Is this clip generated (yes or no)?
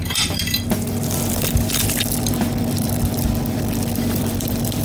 yes